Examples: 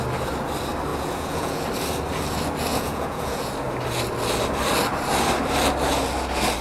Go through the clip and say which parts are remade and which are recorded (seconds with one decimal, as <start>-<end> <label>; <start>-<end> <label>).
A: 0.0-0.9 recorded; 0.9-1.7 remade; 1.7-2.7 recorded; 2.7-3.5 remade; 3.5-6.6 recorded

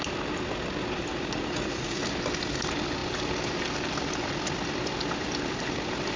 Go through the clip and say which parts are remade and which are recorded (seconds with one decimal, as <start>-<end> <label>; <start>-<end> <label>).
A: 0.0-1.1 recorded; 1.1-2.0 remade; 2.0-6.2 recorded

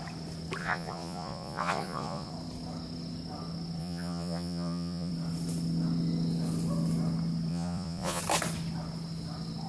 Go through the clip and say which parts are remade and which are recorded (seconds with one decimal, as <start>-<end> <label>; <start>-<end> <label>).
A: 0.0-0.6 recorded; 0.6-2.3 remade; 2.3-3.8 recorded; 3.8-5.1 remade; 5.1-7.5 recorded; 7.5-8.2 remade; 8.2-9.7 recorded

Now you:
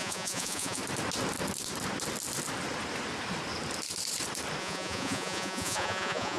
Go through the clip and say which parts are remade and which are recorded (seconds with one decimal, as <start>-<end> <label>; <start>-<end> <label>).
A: 0.0-0.8 remade; 0.8-4.6 recorded; 4.6-6.4 remade